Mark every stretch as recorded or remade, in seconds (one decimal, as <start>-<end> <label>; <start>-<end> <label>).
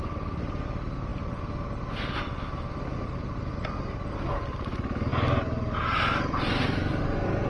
0.0-7.5 recorded